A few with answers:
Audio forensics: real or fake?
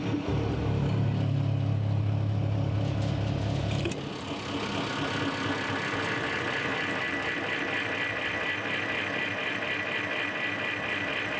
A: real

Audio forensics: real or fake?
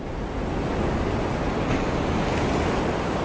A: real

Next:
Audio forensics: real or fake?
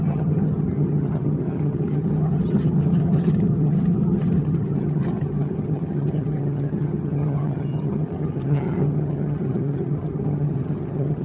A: fake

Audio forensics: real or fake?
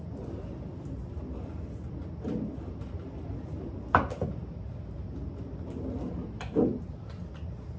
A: real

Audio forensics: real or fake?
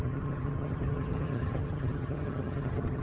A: fake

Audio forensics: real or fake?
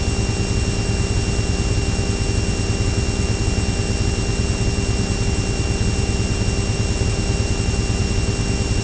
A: real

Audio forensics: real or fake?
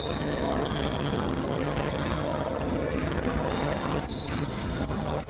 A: fake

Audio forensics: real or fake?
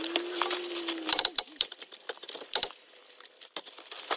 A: real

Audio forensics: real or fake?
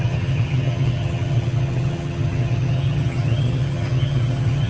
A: fake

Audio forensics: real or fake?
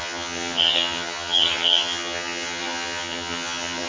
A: fake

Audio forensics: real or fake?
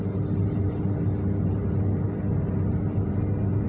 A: real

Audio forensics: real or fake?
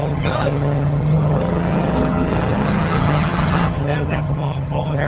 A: fake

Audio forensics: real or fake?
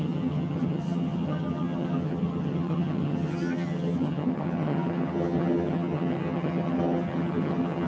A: fake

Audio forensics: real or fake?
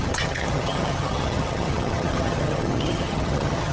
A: fake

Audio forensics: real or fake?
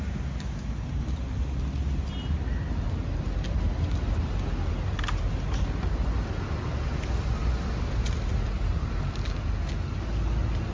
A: real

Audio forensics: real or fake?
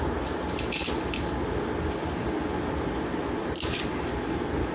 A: real